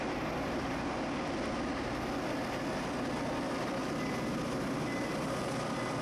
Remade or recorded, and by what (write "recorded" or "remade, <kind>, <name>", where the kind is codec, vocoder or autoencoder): recorded